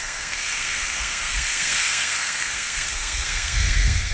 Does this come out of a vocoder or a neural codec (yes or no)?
yes